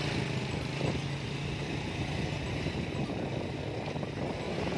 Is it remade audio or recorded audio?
recorded